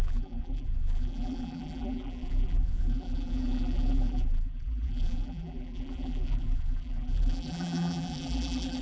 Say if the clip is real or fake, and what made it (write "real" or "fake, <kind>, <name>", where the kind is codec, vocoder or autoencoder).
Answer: fake, vocoder, BigVGAN v2